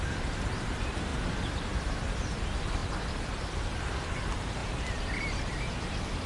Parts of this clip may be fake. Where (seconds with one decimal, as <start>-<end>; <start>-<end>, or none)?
0.0-1.1; 1.8-2.8; 3.8-6.3